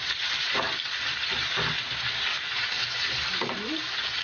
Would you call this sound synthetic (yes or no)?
no